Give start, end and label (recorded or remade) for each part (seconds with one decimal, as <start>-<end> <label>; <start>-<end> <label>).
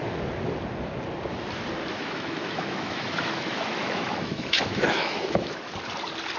0.0-1.9 recorded; 1.9-5.7 remade; 5.7-6.4 recorded